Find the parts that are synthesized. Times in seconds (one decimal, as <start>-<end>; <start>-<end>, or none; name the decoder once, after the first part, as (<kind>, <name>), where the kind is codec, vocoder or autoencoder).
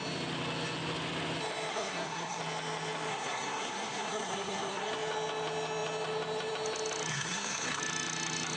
1.7-2.4 (codec, SNAC); 3.1-4.9; 7.1-7.8